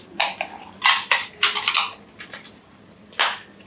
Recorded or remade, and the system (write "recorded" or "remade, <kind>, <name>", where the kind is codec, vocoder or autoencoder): recorded